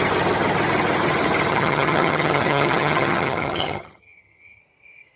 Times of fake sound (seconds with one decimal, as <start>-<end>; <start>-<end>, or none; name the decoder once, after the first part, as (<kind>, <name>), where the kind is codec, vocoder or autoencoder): 1.5-4.6 (vocoder, HiFi-GAN)